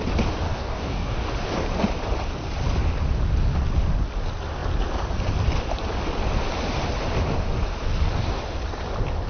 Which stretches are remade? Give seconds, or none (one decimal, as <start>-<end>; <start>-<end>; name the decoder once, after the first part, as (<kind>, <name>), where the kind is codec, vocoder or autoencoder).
0.5-1.3 (codec, DAC)